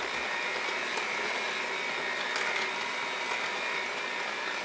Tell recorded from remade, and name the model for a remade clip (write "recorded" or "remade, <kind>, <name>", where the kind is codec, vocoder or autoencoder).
recorded